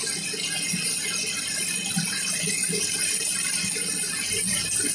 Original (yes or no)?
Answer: yes